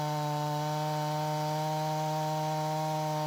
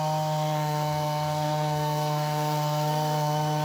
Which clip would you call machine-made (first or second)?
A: second